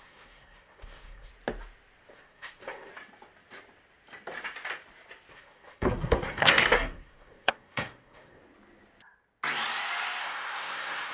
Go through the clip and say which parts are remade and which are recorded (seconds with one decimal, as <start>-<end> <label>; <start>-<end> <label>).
0.0-1.3 remade; 1.3-2.1 recorded; 2.1-2.9 remade; 2.9-5.3 recorded; 5.3-8.4 remade; 8.4-10.2 recorded; 10.2-11.1 remade